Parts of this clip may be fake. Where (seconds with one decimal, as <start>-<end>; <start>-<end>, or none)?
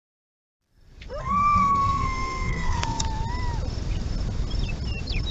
1.2-3.0